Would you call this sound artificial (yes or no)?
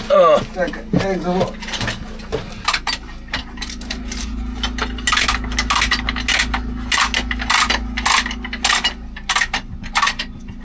no